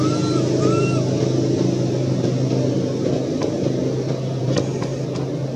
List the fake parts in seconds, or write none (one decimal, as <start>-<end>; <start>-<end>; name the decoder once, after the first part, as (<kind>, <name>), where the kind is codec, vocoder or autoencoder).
none